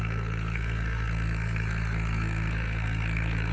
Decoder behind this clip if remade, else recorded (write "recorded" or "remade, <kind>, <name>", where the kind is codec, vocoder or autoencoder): remade, codec, SNAC